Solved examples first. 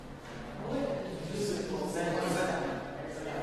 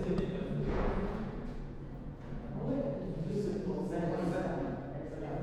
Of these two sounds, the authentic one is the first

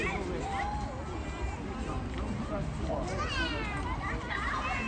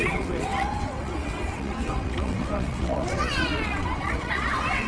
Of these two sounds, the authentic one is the first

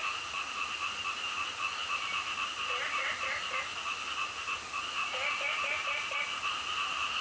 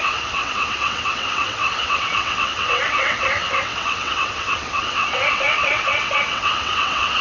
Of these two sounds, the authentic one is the first